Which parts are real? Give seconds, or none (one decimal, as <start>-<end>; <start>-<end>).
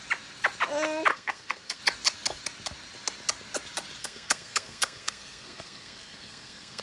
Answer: 0.0-1.1; 1.8-4.0